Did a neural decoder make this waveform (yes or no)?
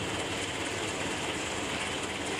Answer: no